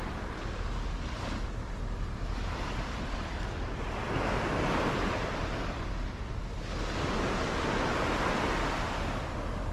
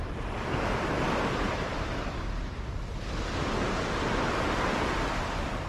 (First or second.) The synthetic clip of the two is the second